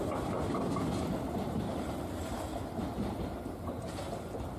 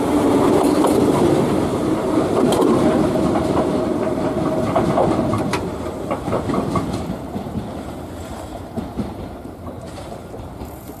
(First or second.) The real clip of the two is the first